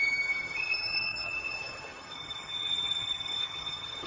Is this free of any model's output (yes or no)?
no